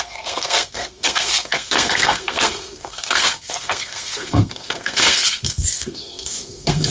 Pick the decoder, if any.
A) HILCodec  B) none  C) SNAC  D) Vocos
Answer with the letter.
C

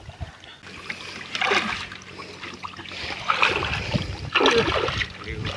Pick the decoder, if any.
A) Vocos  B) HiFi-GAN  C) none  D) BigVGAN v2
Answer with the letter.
C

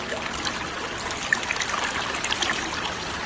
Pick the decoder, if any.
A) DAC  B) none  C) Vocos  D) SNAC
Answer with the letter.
B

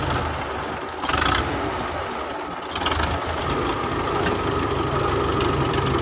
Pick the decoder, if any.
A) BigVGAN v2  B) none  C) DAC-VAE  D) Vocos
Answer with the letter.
B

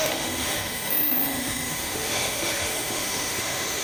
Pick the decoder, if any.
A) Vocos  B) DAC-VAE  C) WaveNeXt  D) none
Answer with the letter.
B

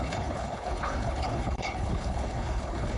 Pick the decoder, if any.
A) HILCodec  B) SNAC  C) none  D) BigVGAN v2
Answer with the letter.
A